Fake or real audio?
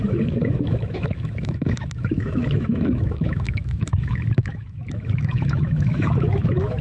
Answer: fake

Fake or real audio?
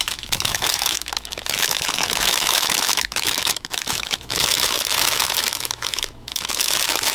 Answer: fake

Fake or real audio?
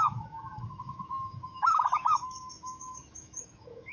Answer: fake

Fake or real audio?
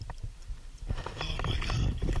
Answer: real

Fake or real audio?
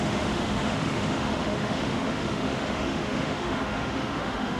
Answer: fake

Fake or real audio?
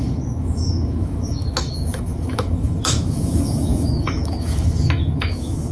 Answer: fake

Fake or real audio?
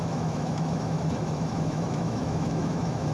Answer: fake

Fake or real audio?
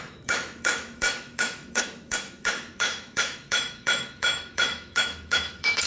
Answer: fake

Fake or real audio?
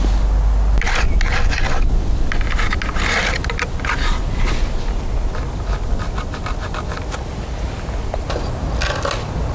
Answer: real